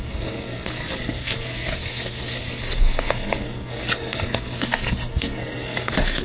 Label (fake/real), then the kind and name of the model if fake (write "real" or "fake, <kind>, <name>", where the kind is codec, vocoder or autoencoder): fake, codec, SNAC